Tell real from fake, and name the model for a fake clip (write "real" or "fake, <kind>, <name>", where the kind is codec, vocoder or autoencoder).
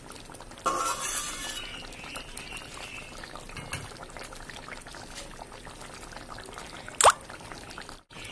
real